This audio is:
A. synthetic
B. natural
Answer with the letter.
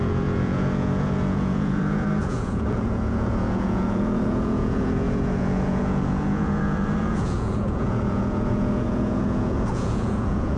A